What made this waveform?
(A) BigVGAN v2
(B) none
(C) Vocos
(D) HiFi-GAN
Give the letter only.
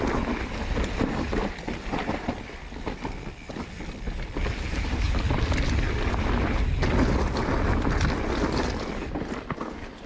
B